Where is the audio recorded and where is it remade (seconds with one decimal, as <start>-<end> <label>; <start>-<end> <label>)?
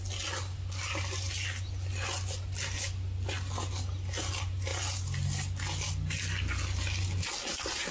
0.0-7.9 recorded